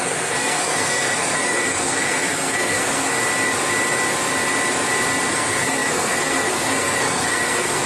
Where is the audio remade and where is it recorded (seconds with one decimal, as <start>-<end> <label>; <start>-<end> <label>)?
0.0-3.1 remade; 3.1-5.3 recorded; 5.3-7.9 remade